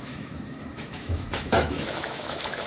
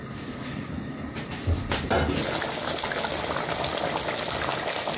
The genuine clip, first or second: second